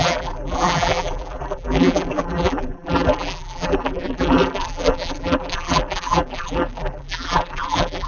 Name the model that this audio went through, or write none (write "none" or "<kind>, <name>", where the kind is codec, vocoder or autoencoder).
vocoder, BigVGAN v2